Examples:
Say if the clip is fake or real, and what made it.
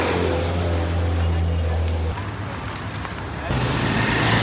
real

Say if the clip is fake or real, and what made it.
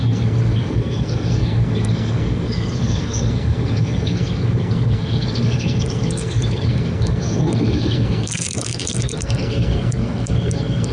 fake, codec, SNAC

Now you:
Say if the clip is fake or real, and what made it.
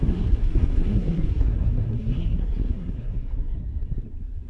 fake, codec, SNAC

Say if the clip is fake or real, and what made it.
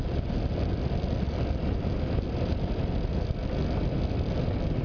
real